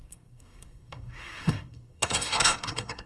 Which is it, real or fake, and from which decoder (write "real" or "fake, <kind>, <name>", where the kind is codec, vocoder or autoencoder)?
fake, codec, SNAC